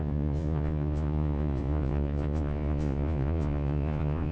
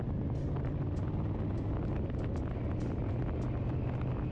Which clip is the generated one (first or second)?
first